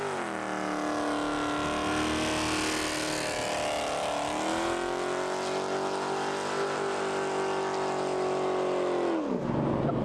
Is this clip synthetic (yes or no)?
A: no